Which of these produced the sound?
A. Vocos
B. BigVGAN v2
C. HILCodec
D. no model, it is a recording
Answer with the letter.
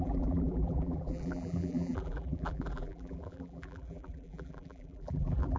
B